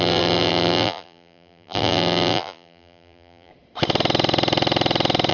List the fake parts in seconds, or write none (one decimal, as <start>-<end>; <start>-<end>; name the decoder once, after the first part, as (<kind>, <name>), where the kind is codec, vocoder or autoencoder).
0.0-3.5 (vocoder, BigVGAN v2)